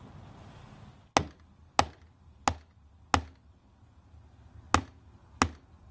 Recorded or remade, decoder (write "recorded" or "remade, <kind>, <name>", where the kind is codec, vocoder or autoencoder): recorded